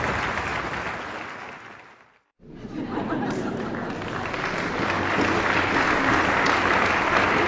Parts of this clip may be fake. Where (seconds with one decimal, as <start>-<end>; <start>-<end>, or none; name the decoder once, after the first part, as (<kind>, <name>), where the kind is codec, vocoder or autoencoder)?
none